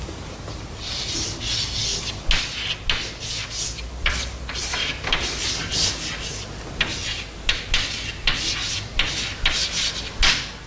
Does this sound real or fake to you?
real